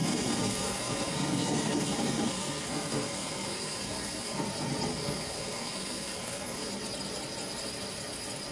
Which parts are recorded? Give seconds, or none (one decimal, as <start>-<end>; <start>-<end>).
4.4-4.9; 6.7-8.5